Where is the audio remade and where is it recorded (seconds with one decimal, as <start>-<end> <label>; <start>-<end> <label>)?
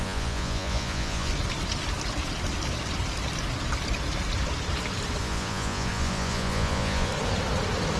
0.0-1.3 remade; 1.3-5.2 recorded; 5.2-7.1 remade; 7.1-8.0 recorded